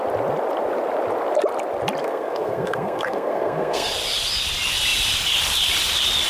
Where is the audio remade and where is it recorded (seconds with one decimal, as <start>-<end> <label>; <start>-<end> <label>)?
0.0-2.0 recorded; 2.0-3.9 remade; 3.9-6.3 recorded